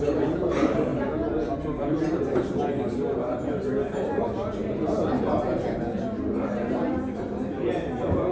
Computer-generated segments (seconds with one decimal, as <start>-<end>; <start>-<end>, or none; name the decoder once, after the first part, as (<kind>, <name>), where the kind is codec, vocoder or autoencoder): none